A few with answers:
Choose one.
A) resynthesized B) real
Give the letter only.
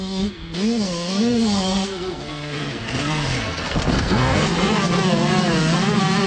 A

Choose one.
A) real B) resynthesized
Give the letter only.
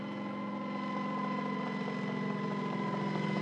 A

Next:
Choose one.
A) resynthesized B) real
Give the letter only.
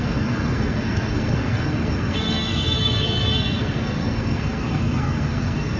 A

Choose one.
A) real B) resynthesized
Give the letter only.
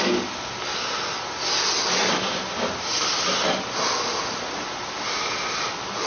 A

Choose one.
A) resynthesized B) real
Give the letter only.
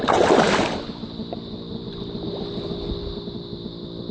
B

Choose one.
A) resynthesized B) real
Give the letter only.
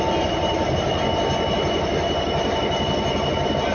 B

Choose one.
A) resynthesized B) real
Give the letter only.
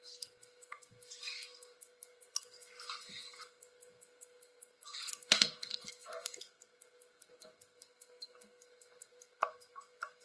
A